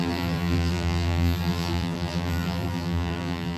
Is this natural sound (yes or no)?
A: no